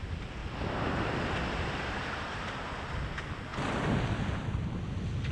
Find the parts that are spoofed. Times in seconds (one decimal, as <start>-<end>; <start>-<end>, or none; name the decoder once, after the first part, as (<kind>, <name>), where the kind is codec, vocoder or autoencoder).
0.4-2.7 (vocoder, BigVGAN v2)